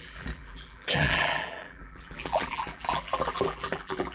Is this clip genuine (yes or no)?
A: no